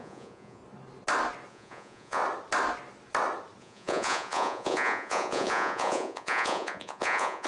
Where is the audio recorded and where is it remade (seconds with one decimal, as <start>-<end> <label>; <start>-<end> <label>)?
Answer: 0.0-0.6 remade; 0.6-1.5 recorded; 1.5-2.2 remade; 2.2-3.6 recorded; 3.6-7.5 remade